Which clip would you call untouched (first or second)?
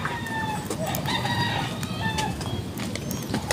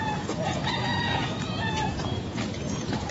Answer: first